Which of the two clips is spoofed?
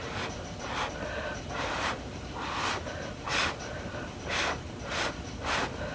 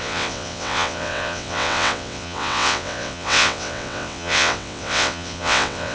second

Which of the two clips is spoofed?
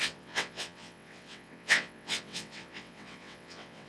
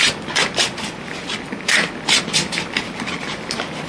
first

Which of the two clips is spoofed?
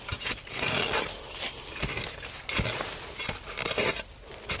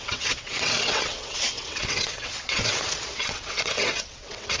second